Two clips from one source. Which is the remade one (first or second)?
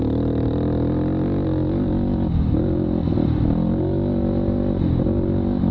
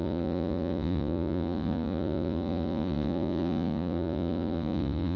second